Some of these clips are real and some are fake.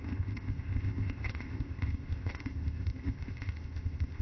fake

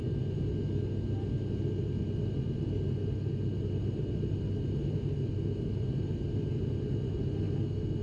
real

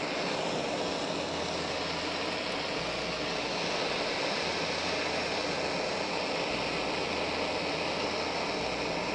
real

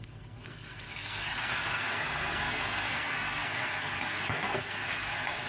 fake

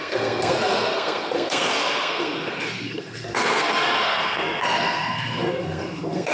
fake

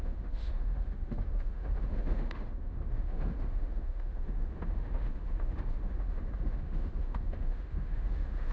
fake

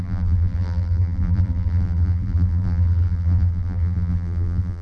fake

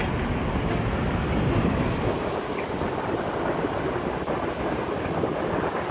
real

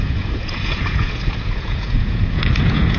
fake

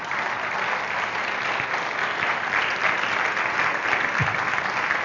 real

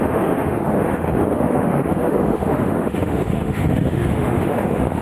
fake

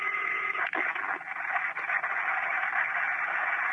real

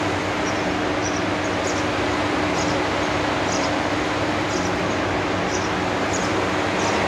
real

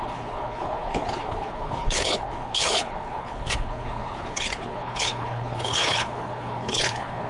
fake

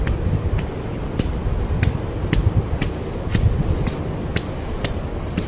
real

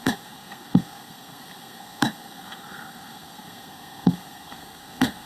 fake